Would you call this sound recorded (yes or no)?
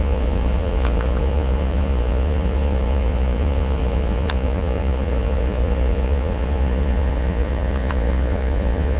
no